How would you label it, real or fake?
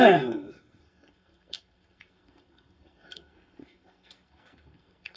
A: fake